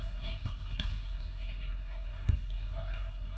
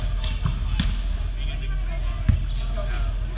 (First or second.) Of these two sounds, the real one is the second